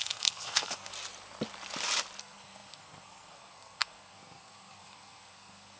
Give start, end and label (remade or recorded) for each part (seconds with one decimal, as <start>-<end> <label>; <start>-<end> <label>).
0.0-0.9 remade; 0.9-2.2 recorded; 2.2-5.8 remade